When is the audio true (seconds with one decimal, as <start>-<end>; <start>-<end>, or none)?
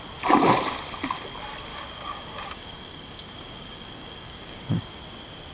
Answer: 0.0-1.7; 5.0-5.5